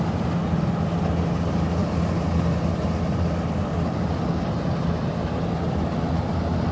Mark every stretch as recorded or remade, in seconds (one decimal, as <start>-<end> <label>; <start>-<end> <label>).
0.0-6.7 recorded